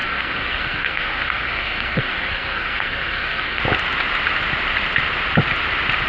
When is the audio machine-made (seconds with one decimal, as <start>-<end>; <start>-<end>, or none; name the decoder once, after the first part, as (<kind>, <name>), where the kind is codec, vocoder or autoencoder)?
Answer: 0.0-3.6 (codec, SNAC)